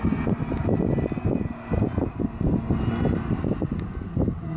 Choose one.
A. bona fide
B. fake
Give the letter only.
A